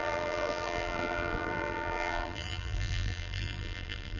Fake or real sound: fake